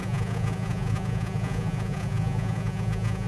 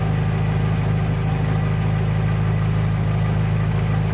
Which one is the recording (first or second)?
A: second